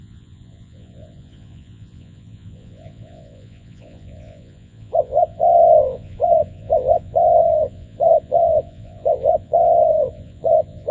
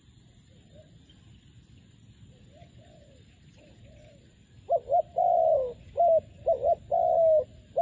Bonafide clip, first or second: second